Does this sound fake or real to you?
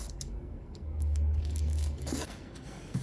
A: fake